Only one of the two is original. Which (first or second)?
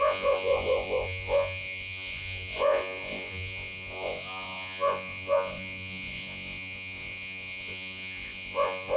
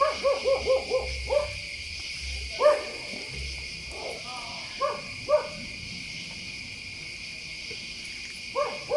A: second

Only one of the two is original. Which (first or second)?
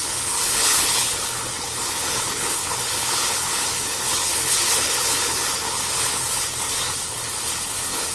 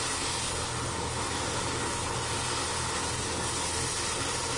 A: second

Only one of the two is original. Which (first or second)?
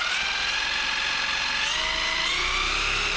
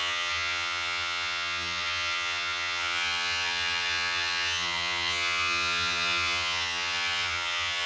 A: first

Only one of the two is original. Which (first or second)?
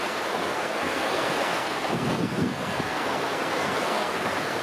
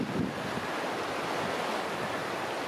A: second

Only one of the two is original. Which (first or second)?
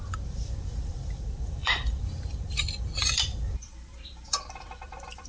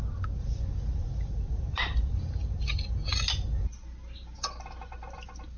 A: second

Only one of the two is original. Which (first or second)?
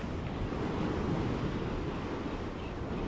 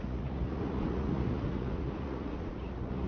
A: first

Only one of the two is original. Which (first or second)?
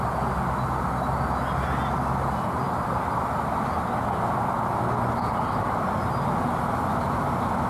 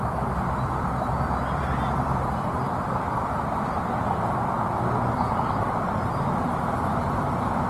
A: first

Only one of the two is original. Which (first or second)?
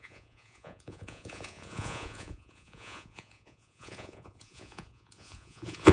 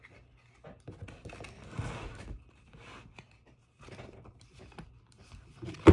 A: second